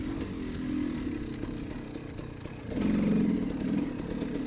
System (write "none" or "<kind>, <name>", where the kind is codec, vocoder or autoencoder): none